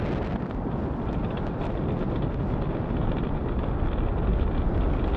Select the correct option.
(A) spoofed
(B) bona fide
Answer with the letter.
B